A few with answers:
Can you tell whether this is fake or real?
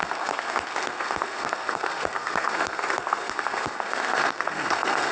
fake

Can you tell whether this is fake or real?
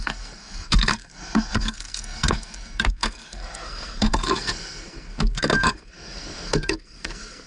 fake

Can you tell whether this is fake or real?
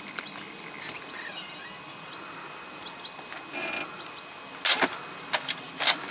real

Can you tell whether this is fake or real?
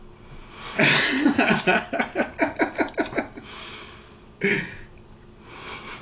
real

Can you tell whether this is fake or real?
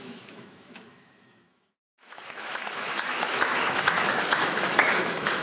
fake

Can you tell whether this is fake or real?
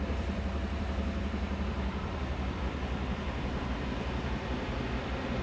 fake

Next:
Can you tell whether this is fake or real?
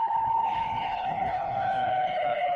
fake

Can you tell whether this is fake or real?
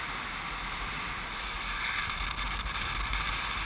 real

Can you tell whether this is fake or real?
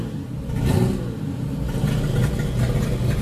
real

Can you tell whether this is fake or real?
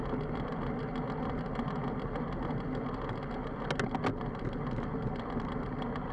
real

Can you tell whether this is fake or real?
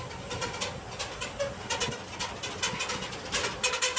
real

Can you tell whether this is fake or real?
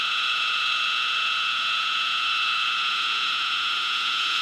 fake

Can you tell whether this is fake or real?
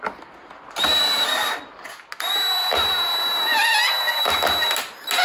real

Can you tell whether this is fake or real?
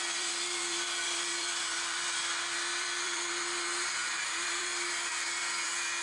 fake